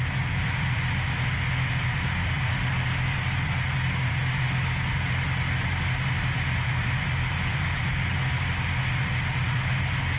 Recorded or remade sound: recorded